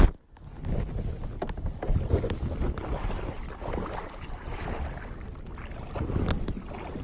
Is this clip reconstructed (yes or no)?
no